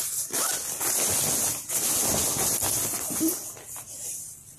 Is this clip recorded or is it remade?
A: recorded